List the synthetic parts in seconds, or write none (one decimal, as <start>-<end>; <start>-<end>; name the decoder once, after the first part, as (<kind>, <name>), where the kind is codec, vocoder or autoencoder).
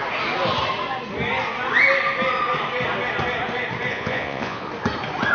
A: 3.9-4.7 (vocoder, Vocos)